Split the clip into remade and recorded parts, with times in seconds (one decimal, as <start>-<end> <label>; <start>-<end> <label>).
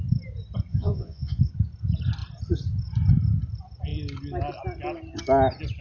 0.0-0.7 recorded; 0.7-1.4 remade; 1.4-5.8 recorded